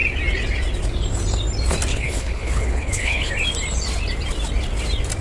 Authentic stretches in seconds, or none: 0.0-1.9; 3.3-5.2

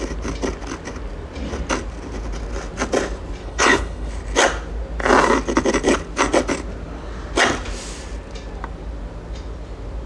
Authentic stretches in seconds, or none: 0.0-3.4; 4.1-10.1